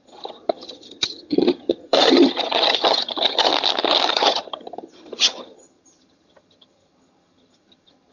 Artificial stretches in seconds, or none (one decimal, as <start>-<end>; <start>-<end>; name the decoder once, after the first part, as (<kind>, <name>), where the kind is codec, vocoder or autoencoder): 0.0-3.5 (vocoder, HiFi-GAN); 4.1-8.1